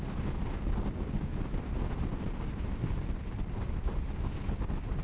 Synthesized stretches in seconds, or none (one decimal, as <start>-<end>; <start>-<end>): none